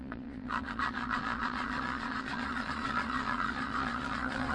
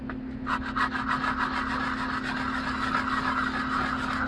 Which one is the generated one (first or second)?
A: first